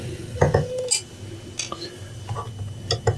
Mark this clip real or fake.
real